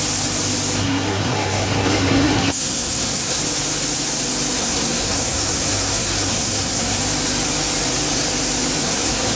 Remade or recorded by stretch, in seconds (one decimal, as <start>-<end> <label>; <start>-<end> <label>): 0.0-0.8 recorded; 0.8-3.4 remade; 3.4-4.6 recorded; 4.6-7.0 remade; 7.0-8.8 recorded; 8.8-9.4 remade